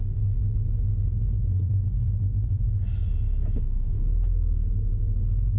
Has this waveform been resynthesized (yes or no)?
no